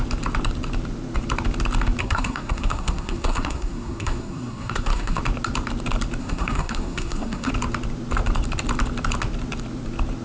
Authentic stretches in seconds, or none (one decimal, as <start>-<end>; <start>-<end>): 0.0-2.0; 5.2-6.2; 7.5-10.2